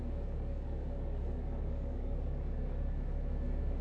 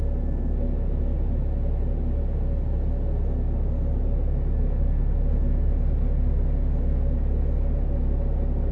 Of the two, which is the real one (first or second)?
second